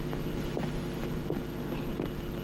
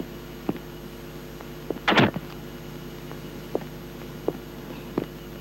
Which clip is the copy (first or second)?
first